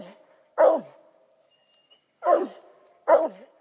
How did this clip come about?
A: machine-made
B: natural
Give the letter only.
B